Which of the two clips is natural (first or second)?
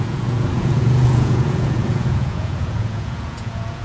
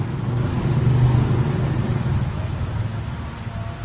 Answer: second